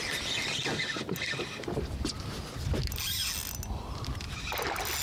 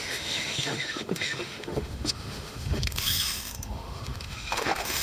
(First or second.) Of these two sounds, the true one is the first